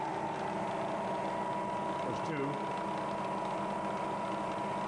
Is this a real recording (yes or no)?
yes